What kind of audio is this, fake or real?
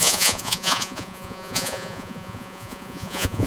fake